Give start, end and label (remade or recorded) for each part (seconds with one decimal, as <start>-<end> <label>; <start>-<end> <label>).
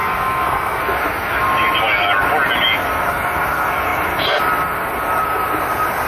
0.0-0.8 remade; 0.8-6.1 recorded